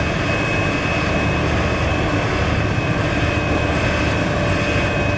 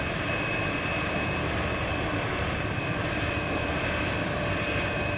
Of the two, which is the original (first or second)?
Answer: first